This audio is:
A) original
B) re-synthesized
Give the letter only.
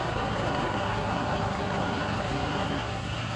B